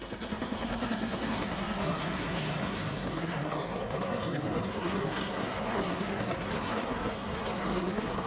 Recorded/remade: remade